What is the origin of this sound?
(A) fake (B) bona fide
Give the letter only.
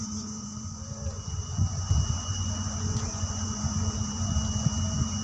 A